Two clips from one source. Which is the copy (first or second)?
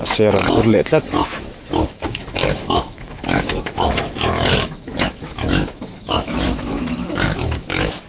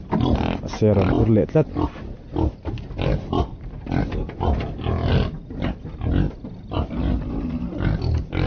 first